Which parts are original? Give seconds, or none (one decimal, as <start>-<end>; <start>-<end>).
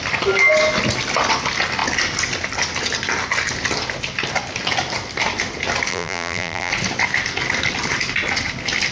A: 0.0-5.9; 6.7-8.9